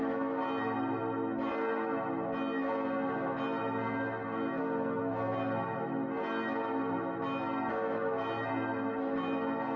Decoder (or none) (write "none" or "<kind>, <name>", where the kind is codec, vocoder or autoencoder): none